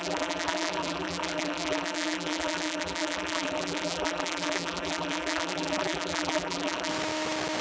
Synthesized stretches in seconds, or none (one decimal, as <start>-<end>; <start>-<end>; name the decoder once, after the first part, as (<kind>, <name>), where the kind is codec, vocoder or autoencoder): 0.0-6.9 (vocoder, BigVGAN v2)